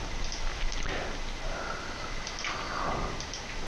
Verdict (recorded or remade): recorded